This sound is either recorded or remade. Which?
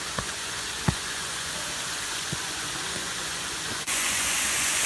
remade